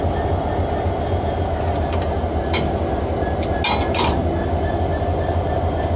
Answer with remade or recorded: recorded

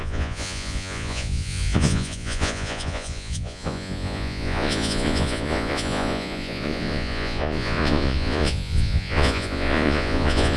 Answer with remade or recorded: remade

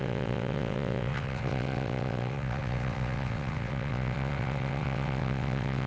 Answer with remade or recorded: remade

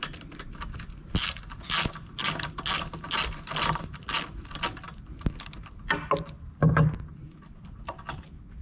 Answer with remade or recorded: recorded